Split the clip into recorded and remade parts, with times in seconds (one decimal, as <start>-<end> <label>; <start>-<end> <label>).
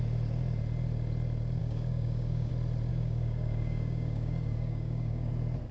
0.0-1.6 recorded; 1.6-2.5 remade; 2.5-2.9 recorded; 2.9-5.3 remade; 5.3-5.7 recorded